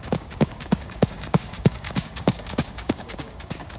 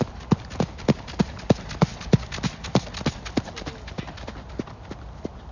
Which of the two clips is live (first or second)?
second